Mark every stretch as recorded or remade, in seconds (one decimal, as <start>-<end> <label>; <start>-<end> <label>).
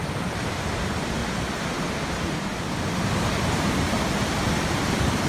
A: 0.0-1.2 remade; 1.2-4.4 recorded; 4.4-5.3 remade